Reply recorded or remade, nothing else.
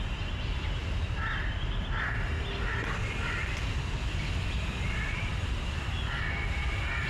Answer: recorded